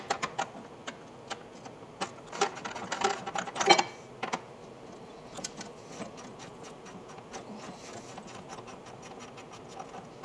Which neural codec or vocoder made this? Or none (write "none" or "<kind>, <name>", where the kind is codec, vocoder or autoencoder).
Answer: none